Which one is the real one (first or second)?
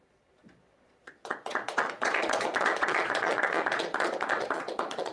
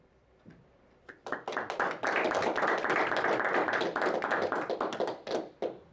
second